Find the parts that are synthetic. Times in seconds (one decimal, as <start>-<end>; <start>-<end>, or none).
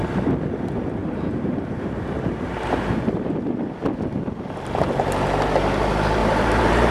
1.0-3.3; 6.2-6.9